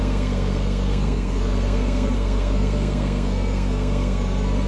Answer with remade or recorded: remade